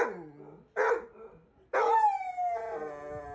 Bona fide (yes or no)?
yes